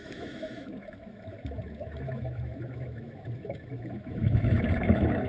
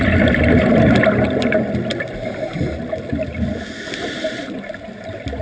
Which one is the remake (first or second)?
first